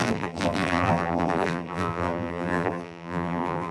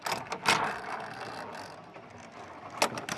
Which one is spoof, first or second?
first